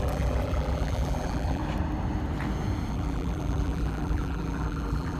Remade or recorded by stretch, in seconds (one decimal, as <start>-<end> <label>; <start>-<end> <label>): 0.0-1.6 remade; 1.6-2.9 recorded; 2.9-5.2 remade